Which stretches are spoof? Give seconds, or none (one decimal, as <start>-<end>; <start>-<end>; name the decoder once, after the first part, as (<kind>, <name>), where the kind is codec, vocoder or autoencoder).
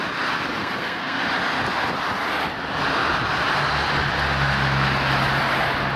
0.6-1.2 (codec, SNAC)